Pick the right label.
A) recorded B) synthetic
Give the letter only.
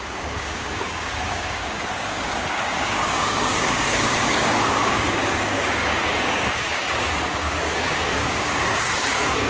B